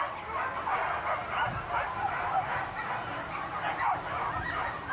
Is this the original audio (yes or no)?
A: yes